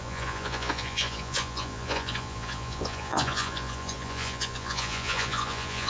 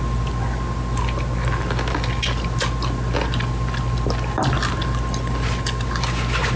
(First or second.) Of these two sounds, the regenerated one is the first